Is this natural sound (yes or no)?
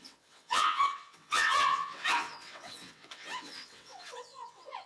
no